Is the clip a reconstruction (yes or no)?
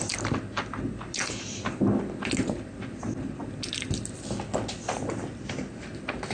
no